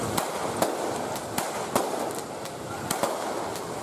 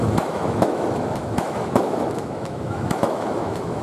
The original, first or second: first